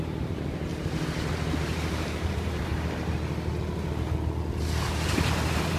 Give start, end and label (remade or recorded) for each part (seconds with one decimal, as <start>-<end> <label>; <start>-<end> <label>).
0.0-0.7 remade; 0.7-1.6 recorded; 1.6-2.7 remade; 2.7-5.1 recorded; 5.1-5.8 remade